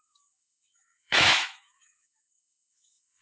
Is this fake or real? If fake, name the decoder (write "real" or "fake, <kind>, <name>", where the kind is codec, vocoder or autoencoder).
fake, autoencoder, DAC-VAE